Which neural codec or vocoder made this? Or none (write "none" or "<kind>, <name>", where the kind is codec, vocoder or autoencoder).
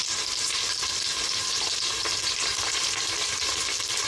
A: none